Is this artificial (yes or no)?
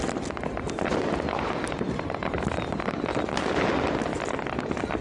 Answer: no